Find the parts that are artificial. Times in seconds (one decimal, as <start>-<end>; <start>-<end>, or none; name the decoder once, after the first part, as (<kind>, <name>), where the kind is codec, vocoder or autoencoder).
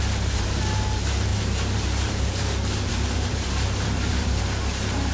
1.3-4.4 (vocoder, BigVGAN v2)